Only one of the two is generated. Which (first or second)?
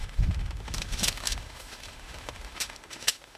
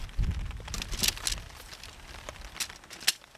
first